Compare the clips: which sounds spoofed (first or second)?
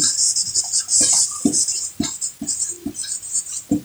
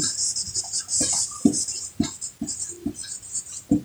first